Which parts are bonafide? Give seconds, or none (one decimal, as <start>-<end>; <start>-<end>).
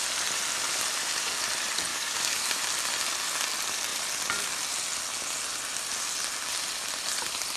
0.0-1.9; 2.5-7.6